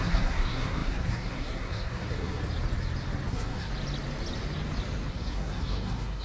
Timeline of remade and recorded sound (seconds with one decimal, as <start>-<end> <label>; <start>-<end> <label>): 0.0-2.4 remade; 2.4-3.3 recorded; 3.3-3.7 remade; 3.7-5.1 recorded; 5.1-6.2 remade